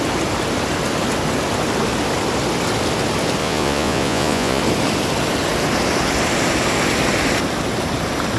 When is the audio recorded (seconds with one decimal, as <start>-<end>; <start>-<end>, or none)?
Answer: 0.0-3.4; 4.6-8.4